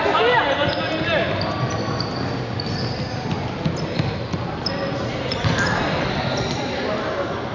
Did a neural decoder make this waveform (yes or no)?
no